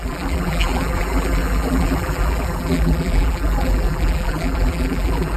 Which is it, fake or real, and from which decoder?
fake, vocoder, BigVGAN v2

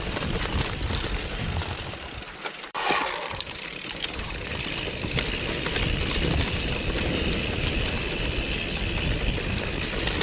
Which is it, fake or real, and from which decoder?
fake, vocoder, BigVGAN v2